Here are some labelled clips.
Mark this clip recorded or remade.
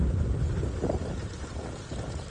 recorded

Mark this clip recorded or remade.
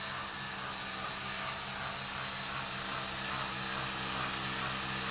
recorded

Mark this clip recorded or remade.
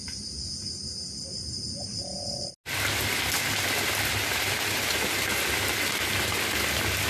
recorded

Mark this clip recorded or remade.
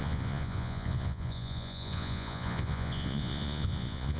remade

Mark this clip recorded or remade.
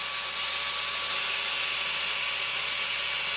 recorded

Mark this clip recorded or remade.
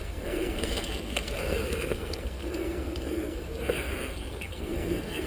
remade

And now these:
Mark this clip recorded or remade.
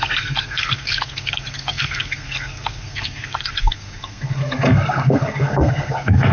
remade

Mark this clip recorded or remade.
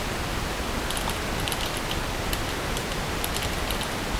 recorded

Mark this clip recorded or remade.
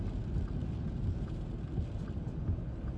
recorded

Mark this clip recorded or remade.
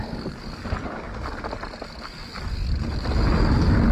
recorded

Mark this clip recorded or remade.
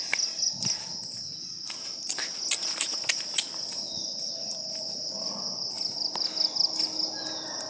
recorded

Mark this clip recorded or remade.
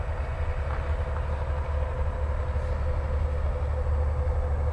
recorded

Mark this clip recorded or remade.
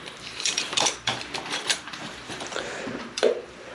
remade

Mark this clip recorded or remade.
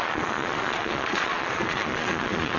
remade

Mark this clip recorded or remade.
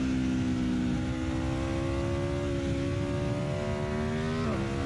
recorded